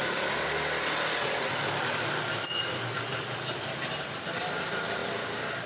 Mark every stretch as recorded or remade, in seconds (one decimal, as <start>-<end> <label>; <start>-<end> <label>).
0.0-5.7 recorded